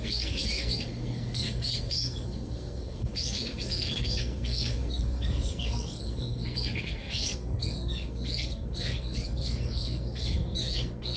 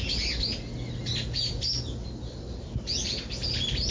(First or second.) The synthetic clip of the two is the first